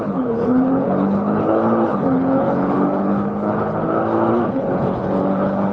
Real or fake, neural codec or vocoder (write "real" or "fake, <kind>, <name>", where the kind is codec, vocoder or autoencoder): fake, codec, HILCodec